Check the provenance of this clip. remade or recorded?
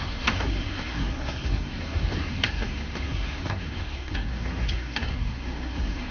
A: remade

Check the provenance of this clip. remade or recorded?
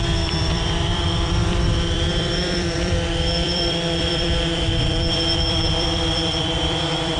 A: remade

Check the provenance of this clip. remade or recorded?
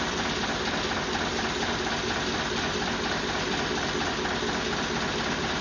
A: recorded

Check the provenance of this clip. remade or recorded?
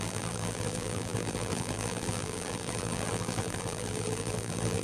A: remade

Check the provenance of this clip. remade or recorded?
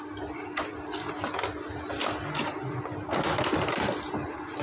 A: recorded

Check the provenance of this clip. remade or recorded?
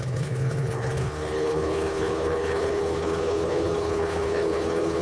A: remade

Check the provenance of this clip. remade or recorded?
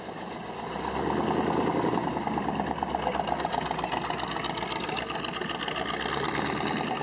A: recorded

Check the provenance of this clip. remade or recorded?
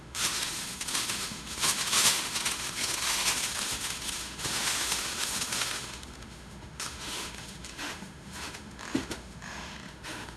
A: remade